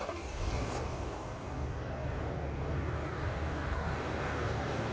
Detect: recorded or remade remade